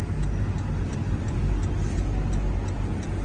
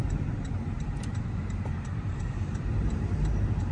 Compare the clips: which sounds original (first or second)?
first